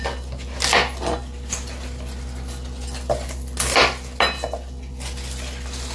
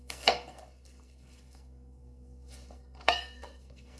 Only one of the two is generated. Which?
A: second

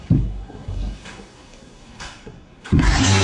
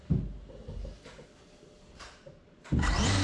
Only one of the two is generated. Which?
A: first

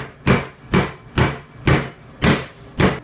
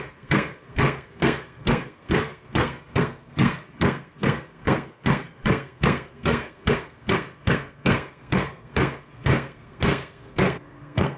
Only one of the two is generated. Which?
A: second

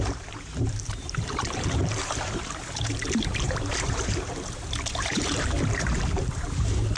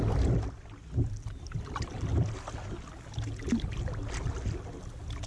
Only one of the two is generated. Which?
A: first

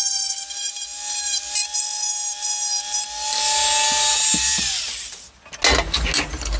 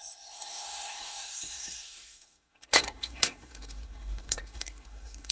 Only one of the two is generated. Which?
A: second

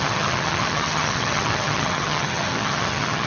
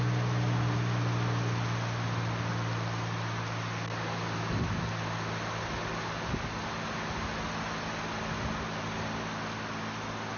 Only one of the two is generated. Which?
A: first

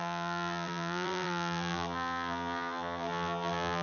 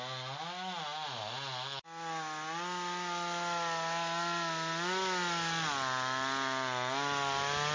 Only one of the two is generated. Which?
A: first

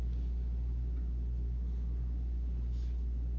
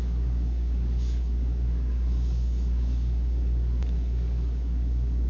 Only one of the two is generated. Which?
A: second